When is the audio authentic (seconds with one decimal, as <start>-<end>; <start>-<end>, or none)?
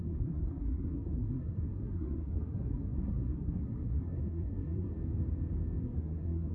4.9-5.8